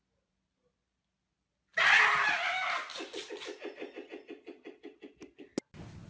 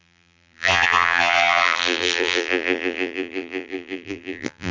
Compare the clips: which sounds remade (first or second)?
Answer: second